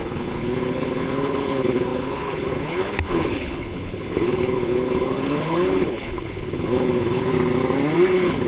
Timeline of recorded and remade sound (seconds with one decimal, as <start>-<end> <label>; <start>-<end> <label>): 0.0-7.3 remade; 7.3-8.1 recorded; 8.1-8.5 remade